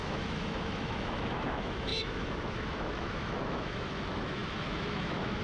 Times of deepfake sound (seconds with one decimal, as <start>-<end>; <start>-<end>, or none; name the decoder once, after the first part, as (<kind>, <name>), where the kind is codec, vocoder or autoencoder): 0.0-5.4 (autoencoder, DAC-VAE)